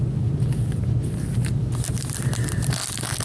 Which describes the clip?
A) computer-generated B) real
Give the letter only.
B